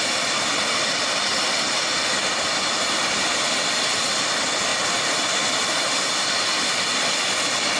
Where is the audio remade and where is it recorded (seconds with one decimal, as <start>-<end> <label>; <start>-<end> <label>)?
0.0-7.8 recorded

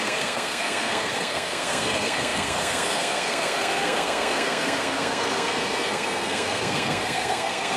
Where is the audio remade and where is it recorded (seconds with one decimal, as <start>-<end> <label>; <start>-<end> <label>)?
0.0-7.8 remade

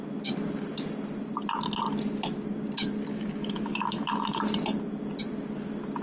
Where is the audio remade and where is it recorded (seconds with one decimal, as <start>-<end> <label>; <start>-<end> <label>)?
0.0-3.1 recorded; 3.1-4.4 remade; 4.4-6.0 recorded

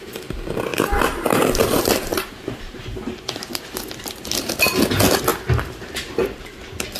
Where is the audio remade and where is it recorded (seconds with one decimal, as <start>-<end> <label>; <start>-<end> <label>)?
0.0-2.1 recorded; 2.1-3.2 remade; 3.2-7.0 recorded